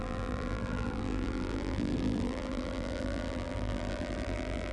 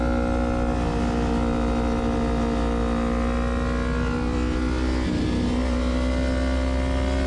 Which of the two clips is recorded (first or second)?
second